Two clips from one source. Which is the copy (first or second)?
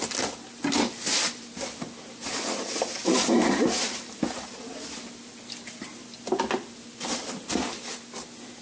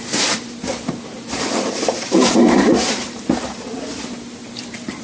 second